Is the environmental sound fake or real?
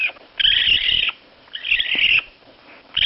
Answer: fake